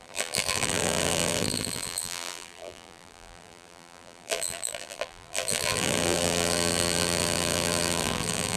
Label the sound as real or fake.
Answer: fake